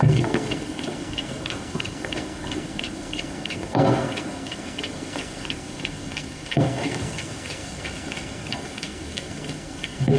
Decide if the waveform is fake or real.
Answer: fake